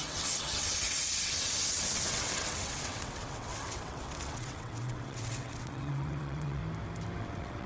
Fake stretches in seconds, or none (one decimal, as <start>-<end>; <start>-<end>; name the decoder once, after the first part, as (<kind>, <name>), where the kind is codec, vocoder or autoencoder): 0.0-6.6 (vocoder, WaveNeXt); 7.2-7.7